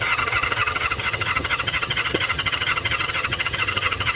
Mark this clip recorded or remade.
remade